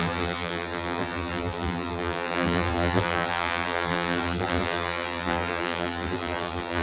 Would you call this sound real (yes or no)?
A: no